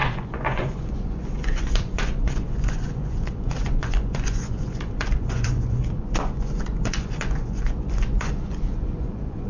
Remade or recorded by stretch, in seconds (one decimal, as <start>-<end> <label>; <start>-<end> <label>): 0.0-9.5 remade